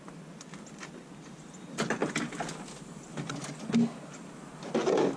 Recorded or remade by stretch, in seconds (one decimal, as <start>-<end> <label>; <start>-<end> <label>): 0.0-5.2 recorded